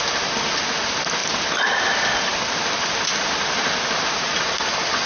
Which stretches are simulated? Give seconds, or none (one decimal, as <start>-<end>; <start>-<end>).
none